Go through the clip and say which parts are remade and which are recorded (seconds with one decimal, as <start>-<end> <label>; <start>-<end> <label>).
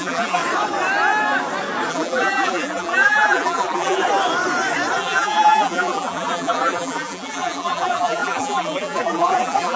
0.0-0.4 remade; 0.4-1.9 recorded; 1.9-4.0 remade; 4.0-5.0 recorded; 5.0-9.8 remade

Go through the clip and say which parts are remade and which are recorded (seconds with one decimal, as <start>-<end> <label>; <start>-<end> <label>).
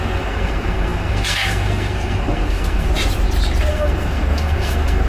0.0-2.9 remade; 2.9-3.7 recorded; 3.7-5.1 remade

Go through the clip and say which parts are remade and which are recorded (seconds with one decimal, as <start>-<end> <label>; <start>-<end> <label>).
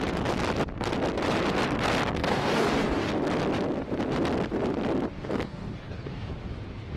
0.0-2.2 recorded; 2.2-3.1 remade; 3.1-5.1 recorded; 5.1-6.3 remade; 6.3-7.0 recorded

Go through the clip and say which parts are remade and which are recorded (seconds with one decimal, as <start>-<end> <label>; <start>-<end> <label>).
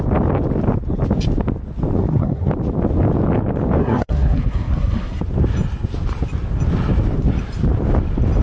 0.0-2.0 recorded; 2.0-2.5 remade; 2.5-3.8 recorded; 3.8-5.2 remade; 5.2-8.4 recorded